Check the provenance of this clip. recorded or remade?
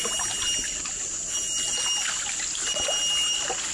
recorded